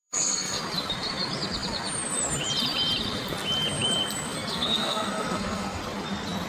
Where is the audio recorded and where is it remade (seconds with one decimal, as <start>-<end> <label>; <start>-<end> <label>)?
0.0-0.6 remade; 0.6-4.5 recorded; 4.5-5.8 remade; 5.8-6.5 recorded